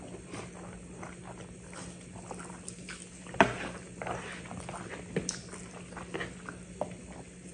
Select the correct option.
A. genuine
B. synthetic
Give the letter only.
A